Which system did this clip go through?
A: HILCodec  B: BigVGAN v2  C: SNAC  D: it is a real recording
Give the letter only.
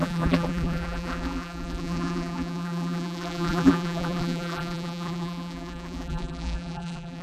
B